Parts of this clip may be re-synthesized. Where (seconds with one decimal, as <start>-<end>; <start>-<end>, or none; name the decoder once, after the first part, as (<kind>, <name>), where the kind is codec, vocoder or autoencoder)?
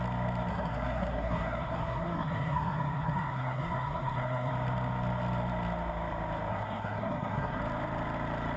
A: 0.5-4.5 (codec, SNAC); 6.5-7.6